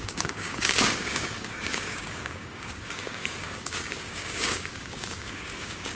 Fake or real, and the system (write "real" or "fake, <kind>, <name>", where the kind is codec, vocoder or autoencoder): fake, codec, DAC